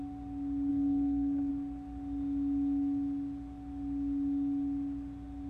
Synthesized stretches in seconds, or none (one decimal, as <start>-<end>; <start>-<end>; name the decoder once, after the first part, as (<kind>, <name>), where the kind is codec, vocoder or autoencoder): 0.7-1.5 (codec, SNAC)